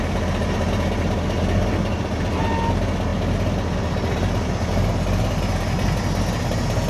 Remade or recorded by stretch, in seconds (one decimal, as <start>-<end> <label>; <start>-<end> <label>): 0.0-6.9 recorded